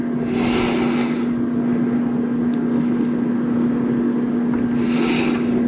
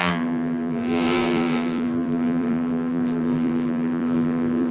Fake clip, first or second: second